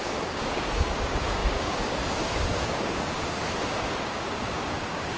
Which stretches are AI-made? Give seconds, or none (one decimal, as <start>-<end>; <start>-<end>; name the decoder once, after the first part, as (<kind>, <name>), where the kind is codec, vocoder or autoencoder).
0.0-5.2 (codec, DAC)